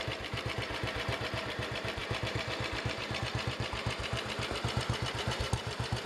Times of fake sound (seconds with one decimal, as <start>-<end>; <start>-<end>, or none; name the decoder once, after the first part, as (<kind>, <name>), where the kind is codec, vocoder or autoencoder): 0.0-6.1 (vocoder, BigVGAN v2)